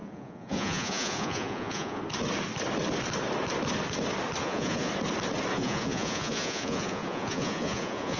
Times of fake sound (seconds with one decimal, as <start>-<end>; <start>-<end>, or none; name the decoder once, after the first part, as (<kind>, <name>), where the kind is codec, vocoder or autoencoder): 0.0-2.0 (vocoder, Vocos); 4.4-4.9; 5.5-8.2